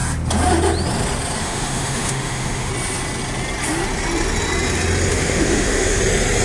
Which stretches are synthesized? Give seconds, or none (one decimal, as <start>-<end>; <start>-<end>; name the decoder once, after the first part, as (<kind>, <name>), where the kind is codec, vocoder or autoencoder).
1.4-2.7 (autoencoder, DAC-VAE); 5.1-6.0